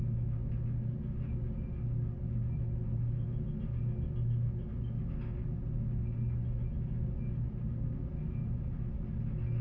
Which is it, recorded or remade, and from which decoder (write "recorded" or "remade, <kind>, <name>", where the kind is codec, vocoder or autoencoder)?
recorded